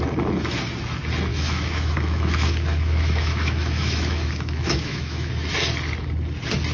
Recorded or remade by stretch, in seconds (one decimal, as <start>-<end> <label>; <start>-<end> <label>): 0.0-1.3 recorded; 1.3-5.3 remade; 5.3-6.7 recorded